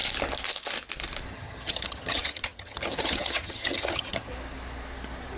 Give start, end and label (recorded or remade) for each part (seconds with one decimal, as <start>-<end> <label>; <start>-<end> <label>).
0.0-1.3 recorded; 1.3-4.3 remade; 4.3-5.4 recorded